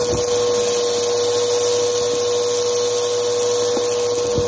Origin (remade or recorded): recorded